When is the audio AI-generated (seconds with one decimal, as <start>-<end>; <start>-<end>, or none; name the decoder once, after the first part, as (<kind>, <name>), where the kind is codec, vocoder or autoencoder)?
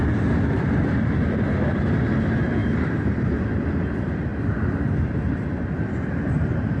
2.6-3.3 (vocoder, BigVGAN v2); 4.3-6.8